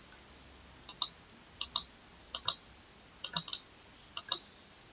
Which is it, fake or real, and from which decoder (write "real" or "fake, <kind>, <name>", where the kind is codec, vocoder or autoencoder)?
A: real